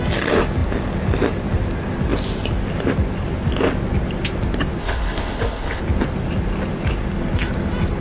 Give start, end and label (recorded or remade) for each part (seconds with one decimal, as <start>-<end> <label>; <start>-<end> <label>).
0.0-4.8 recorded; 4.8-5.8 remade; 5.8-8.0 recorded